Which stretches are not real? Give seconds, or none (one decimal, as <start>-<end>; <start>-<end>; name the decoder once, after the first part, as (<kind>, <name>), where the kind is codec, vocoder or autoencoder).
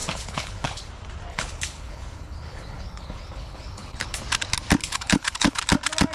0.0-0.9 (codec, HILCodec); 1.3-4.2; 4.8-5.6